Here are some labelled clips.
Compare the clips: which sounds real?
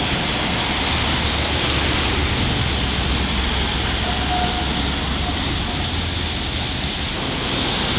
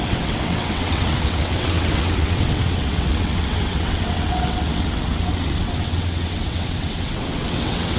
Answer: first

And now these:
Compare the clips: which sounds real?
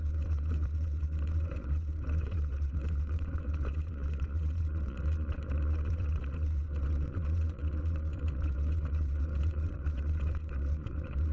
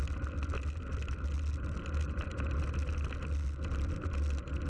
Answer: second